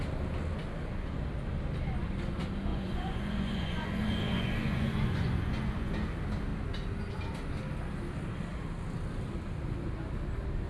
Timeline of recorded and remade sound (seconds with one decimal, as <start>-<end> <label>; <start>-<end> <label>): 0.0-2.7 recorded; 2.7-5.9 remade; 5.9-10.7 recorded